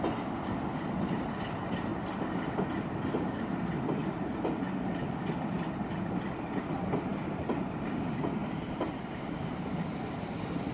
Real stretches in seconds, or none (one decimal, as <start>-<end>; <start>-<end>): 0.0-8.4; 9.9-10.7